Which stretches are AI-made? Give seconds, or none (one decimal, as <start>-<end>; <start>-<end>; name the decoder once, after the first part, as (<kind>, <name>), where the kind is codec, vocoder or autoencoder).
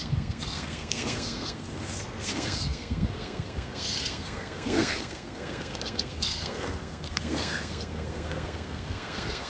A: 0.0-9.5 (codec, SNAC)